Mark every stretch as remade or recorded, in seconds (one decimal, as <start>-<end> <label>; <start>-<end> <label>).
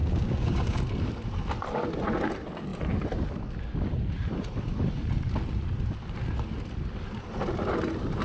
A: 0.0-0.8 remade; 0.8-8.2 recorded